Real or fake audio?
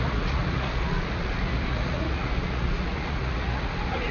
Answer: fake